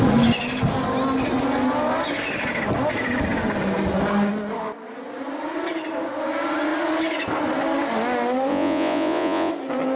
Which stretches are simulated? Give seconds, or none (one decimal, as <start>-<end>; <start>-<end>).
8.5-9.5